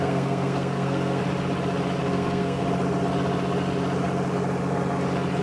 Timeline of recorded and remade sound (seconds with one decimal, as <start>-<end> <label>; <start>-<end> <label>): 0.0-1.2 remade; 1.2-2.0 recorded; 2.0-2.6 remade; 2.6-5.4 recorded